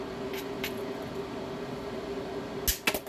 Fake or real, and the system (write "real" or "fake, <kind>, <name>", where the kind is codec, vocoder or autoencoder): real